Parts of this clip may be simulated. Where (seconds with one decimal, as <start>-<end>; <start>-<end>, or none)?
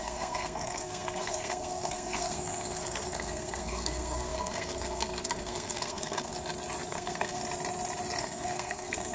0.0-6.3; 6.9-7.4; 8.2-9.1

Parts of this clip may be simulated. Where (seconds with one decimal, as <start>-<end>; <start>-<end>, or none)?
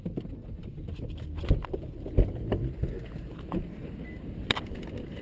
none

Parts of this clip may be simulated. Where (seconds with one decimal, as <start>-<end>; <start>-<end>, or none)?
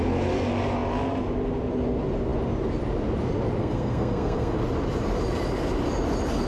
3.6-4.6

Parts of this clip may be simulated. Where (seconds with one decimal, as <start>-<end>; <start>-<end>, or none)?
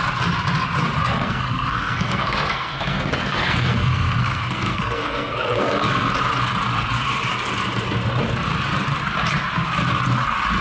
1.1-6.1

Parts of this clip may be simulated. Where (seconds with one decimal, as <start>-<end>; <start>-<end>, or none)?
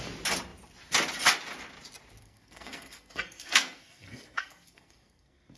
2.2-5.6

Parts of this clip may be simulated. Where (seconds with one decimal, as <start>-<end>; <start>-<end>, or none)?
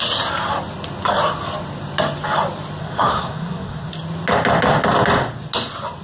2.8-3.9